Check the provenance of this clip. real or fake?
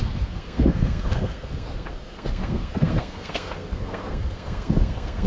fake